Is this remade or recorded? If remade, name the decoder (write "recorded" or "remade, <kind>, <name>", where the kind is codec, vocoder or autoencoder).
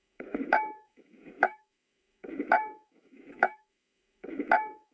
remade, autoencoder, DAC-VAE